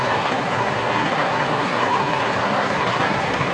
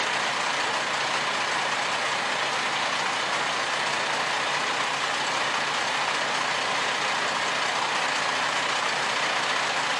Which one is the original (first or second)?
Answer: second